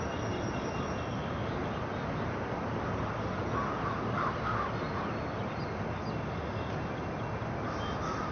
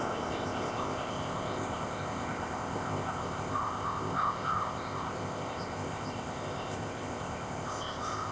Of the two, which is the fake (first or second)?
second